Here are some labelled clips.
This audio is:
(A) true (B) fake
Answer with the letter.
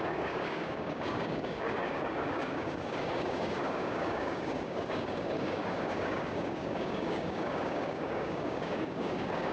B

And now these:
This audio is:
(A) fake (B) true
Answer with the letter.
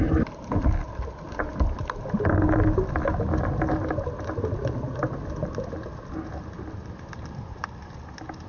B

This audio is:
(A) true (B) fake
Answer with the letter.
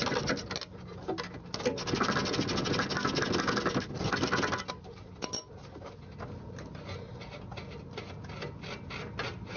A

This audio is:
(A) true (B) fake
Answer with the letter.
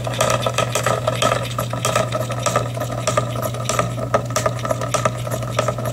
A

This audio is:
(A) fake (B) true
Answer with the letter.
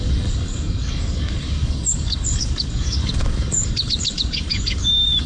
A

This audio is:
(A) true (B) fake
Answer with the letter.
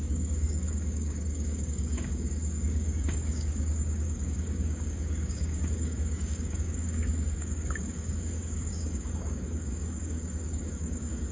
B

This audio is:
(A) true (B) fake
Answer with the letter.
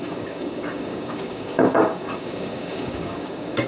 B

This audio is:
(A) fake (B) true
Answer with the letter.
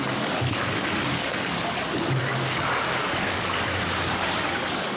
A